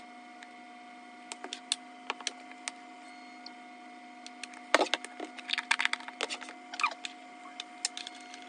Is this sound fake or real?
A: real